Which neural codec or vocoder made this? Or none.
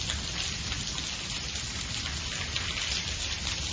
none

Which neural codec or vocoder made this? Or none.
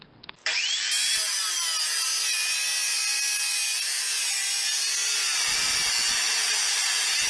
none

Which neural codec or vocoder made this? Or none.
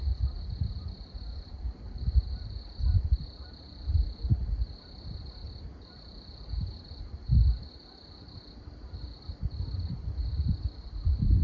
none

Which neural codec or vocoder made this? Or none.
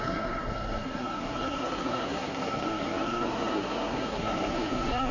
codec, SNAC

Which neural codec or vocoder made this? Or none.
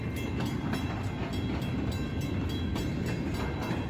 none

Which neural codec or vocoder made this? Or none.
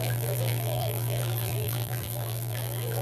vocoder, BigVGAN v2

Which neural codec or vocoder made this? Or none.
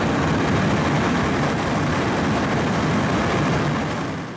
none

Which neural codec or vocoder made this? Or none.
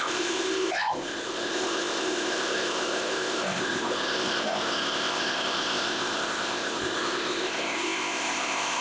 codec, ZipCodec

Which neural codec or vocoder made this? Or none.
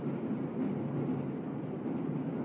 none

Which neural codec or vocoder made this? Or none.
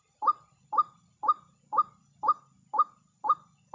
none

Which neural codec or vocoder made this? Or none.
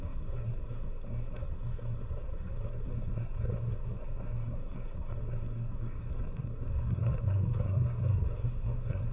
codec, SNAC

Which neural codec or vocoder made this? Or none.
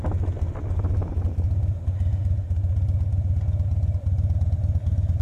none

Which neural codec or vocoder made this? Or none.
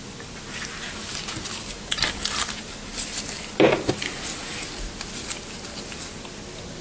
none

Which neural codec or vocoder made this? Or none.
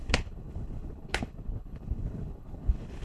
codec, HILCodec